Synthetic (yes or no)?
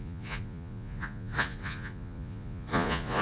yes